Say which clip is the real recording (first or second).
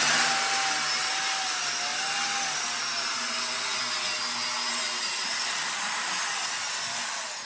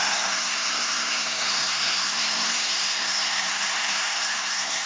first